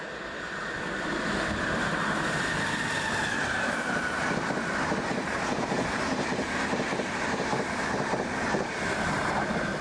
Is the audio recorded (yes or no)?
no